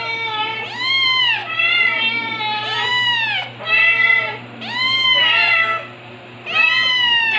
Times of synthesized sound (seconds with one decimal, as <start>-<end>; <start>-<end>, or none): none